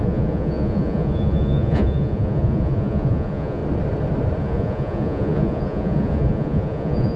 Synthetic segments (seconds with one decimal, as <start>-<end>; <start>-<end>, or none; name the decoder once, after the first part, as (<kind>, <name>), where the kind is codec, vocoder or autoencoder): 0.0-3.6 (vocoder, Vocos); 4.4-7.2